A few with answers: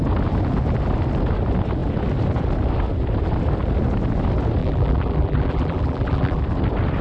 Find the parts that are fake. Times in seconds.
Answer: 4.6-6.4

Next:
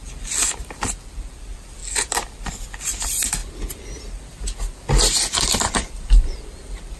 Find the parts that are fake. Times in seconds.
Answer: none

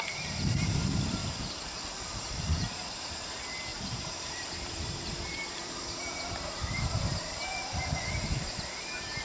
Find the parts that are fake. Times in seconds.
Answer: 0.0-1.2; 2.2-7.5; 8.1-9.2

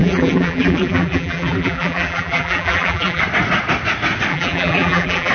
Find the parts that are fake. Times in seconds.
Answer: 0.0-3.2; 4.3-5.3